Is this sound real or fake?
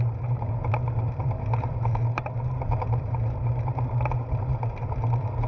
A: fake